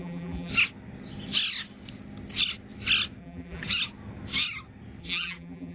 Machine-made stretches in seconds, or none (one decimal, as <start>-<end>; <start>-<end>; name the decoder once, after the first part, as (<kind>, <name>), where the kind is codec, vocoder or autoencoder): 0.0-0.5 (vocoder, BigVGAN v2); 3.2-3.6; 5.0-5.7